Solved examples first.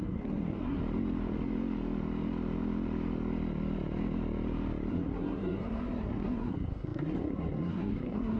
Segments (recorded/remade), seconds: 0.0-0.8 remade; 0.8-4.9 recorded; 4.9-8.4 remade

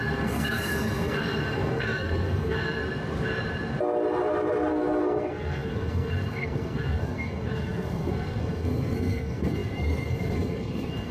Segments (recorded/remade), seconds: 0.0-2.8 remade; 2.8-4.7 recorded; 4.7-11.1 remade

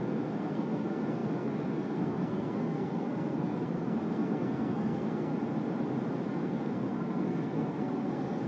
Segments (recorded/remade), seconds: 0.0-5.3 remade; 5.3-6.3 recorded; 6.3-8.5 remade

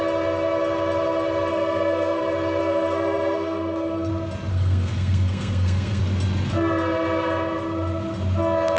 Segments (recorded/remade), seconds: 0.0-1.5 recorded; 1.5-2.2 remade; 2.2-2.6 recorded; 2.6-4.1 remade; 4.1-4.5 recorded; 4.5-6.0 remade; 6.0-8.8 recorded

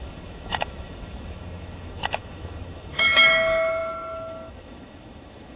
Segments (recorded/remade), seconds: 0.0-5.6 remade